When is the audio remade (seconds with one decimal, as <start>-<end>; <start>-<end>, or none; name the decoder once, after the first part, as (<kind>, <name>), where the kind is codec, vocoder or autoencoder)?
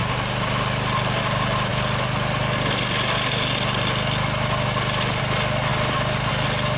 5.7-6.3 (vocoder, BigVGAN v2)